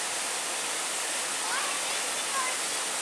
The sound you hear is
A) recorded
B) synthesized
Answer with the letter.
A